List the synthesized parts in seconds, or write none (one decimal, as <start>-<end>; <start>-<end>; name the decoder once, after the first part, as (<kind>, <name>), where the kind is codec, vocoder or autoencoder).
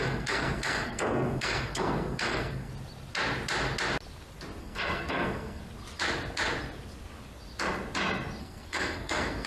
0.0-2.7 (codec, SNAC); 4.6-5.6; 8.4-9.5